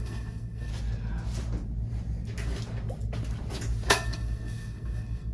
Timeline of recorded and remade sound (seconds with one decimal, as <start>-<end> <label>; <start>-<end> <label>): 0.0-0.7 remade; 0.7-3.9 recorded; 3.9-5.3 remade